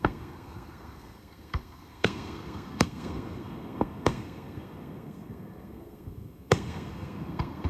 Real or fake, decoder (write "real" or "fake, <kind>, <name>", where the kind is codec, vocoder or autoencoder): fake, codec, SNAC